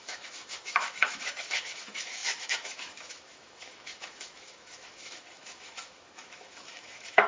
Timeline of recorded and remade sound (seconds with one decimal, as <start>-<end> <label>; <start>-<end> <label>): 0.0-7.3 remade